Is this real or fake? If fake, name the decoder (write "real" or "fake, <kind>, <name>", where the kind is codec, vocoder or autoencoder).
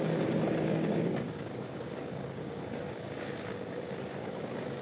fake, codec, DAC